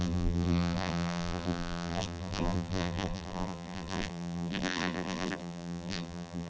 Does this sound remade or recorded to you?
remade